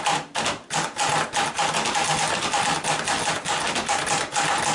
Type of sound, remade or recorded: recorded